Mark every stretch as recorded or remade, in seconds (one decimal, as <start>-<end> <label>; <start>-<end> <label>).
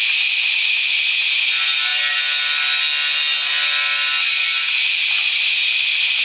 0.0-6.2 recorded